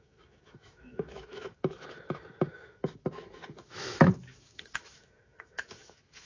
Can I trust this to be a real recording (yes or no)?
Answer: no